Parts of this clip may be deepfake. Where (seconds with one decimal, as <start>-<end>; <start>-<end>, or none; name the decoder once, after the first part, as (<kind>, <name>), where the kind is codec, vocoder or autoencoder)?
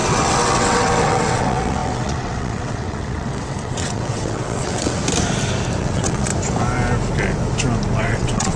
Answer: 0.0-5.0 (vocoder, WaveNeXt); 5.8-6.3; 8.0-8.6